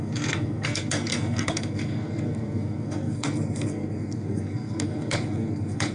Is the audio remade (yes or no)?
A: yes